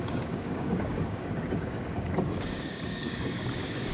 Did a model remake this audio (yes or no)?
yes